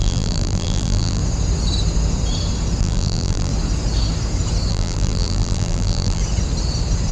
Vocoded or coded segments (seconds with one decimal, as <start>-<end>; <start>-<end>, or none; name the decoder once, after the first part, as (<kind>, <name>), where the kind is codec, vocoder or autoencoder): 0.0-1.2 (vocoder, BigVGAN v2); 2.8-3.5; 4.7-6.2